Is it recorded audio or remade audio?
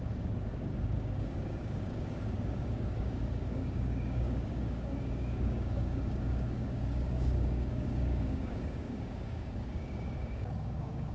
remade